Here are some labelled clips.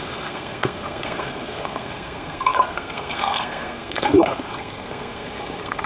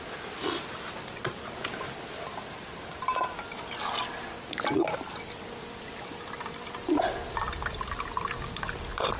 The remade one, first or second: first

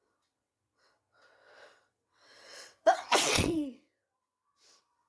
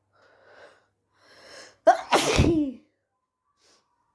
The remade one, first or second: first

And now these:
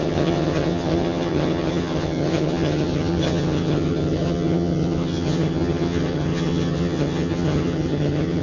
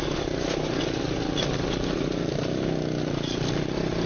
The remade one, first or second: first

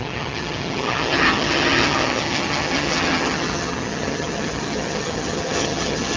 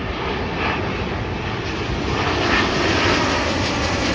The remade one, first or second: first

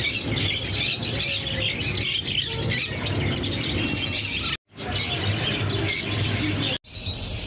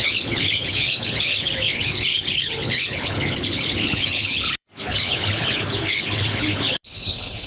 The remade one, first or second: second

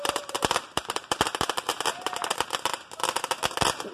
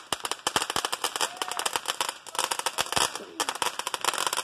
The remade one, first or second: first